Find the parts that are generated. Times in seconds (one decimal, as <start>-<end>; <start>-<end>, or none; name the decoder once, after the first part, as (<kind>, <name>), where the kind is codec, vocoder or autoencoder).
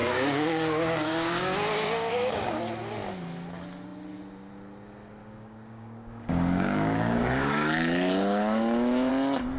0.0-2.6 (codec, DAC); 5.2-9.1